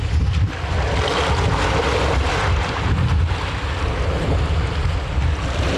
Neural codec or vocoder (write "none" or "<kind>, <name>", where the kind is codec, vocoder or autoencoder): none